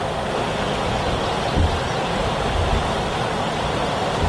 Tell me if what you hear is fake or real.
real